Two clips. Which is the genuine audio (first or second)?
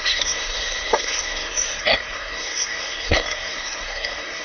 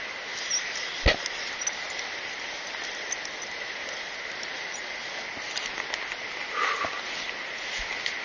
second